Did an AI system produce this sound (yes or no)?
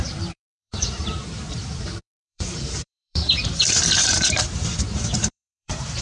yes